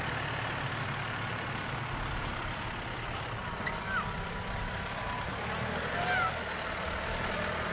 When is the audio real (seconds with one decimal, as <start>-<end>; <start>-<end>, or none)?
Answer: none

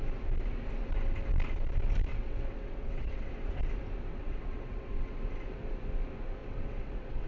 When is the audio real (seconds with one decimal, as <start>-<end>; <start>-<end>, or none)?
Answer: 0.0-2.1; 3.3-4.1; 5.2-6.4